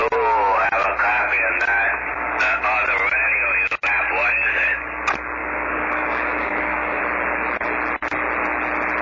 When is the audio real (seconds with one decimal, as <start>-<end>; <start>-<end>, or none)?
0.0-5.4; 7.0-9.0